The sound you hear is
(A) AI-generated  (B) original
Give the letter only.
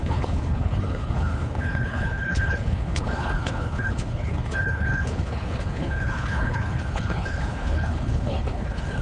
A